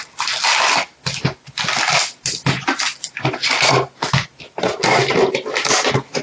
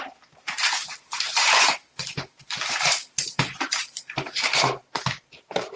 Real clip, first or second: first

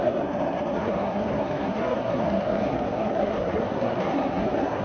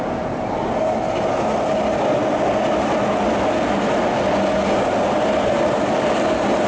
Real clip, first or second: second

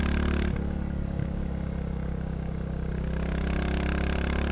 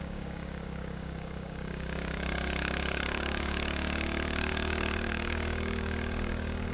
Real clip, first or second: first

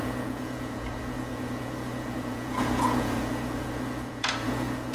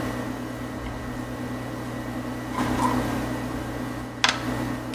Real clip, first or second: second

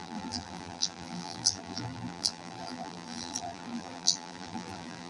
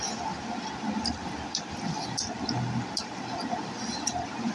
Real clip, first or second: second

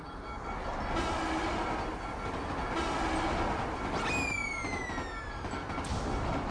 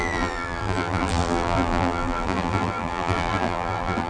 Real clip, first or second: first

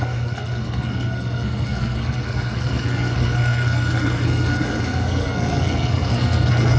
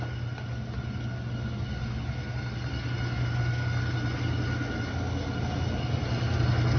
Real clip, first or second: second